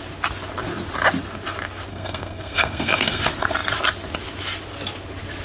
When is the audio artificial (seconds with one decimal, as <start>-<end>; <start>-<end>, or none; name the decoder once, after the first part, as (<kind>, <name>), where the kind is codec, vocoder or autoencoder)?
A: 1.9-3.2 (codec, SNAC)